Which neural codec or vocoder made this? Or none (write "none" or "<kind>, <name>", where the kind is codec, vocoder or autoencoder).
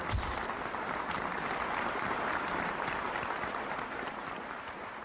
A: none